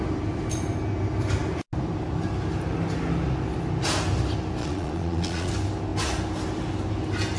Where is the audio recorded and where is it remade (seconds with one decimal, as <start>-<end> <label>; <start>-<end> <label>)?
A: 0.0-4.6 recorded; 4.6-5.5 remade; 5.5-7.4 recorded